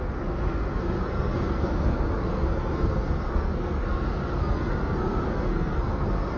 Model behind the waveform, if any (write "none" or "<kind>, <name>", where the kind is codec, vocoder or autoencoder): codec, SNAC